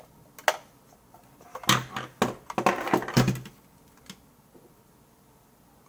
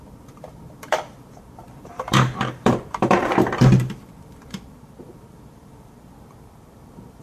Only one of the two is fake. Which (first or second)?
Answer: second